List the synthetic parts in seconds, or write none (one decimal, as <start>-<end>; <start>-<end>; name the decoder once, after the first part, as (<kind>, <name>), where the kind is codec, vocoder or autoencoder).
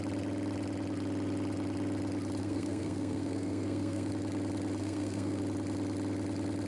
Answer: 2.4-4.1 (codec, SNAC); 4.8-5.4